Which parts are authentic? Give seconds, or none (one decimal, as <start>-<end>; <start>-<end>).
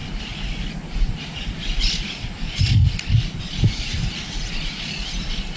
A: 0.0-5.6